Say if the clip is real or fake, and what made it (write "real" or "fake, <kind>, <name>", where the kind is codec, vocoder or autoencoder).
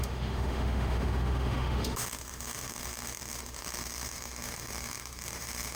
fake, autoencoder, DAC-VAE